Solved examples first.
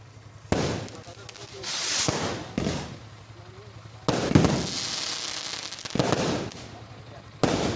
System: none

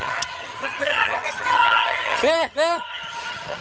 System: vocoder, HiFi-GAN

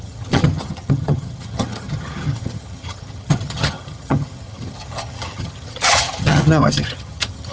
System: vocoder, HiFi-GAN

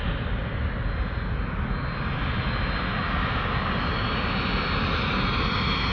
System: none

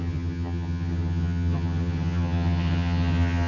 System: vocoder, HiFi-GAN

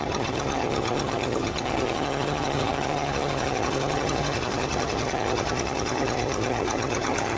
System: vocoder, HiFi-GAN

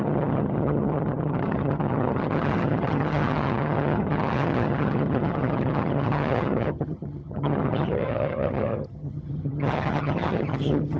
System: vocoder, HiFi-GAN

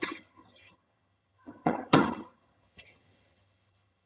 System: vocoder, HiFi-GAN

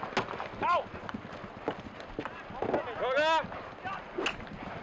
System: none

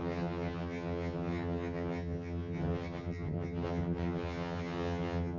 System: vocoder, HiFi-GAN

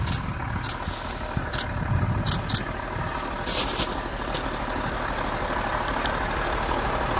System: none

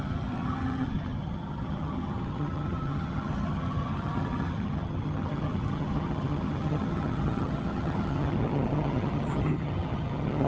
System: vocoder, HiFi-GAN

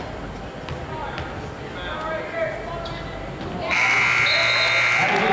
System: none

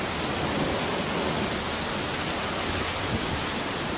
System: none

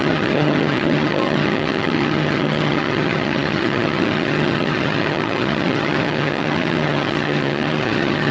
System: vocoder, HiFi-GAN